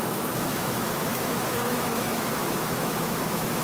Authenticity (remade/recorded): remade